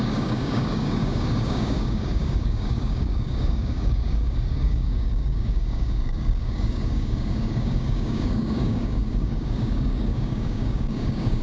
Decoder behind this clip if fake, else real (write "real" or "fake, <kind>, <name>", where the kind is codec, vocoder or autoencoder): fake, codec, DAC